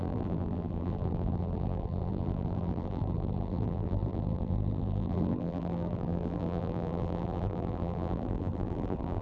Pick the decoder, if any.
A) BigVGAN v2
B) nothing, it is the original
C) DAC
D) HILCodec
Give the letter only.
A